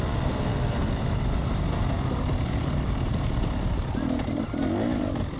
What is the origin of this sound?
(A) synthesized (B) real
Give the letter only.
B